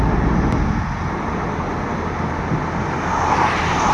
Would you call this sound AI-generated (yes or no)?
no